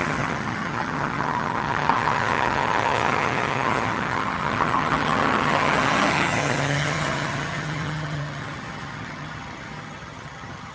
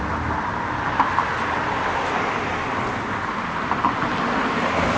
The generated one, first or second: first